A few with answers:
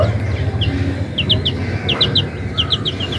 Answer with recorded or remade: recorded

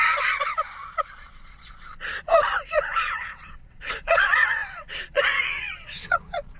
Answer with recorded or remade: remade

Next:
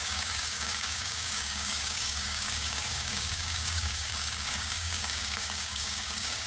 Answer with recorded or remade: remade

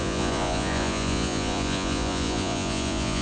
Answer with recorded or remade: remade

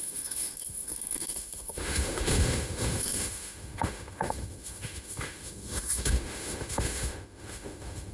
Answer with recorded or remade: remade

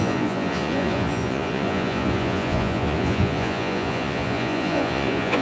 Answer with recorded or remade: remade